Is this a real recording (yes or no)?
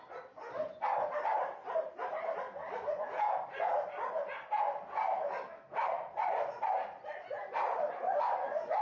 yes